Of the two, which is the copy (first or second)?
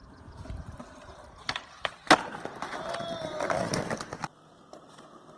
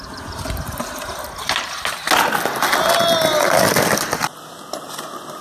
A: first